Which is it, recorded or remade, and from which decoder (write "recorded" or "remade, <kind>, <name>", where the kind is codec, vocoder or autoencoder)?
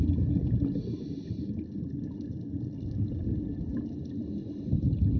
recorded